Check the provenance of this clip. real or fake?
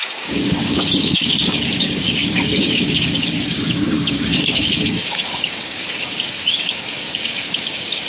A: fake